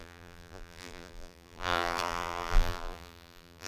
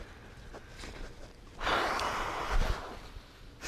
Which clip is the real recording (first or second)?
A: second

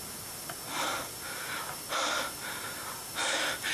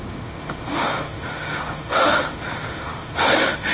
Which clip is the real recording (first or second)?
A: first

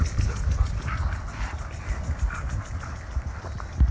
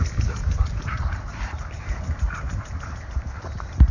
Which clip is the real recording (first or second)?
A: first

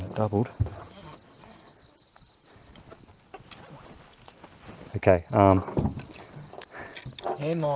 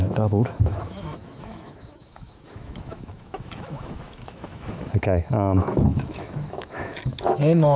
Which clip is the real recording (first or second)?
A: first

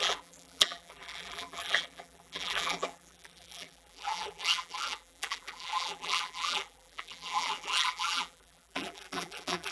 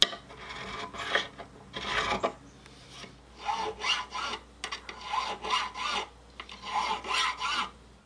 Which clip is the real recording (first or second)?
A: second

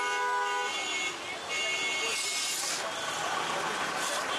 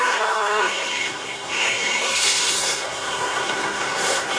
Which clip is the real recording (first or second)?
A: first